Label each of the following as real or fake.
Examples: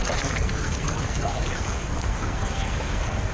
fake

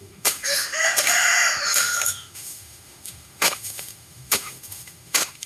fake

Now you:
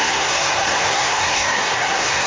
fake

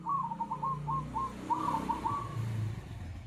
real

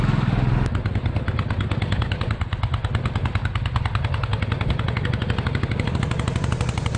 real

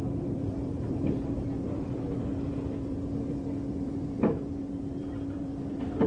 fake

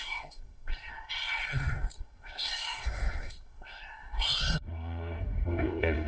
fake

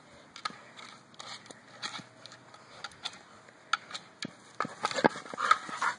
real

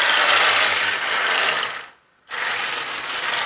real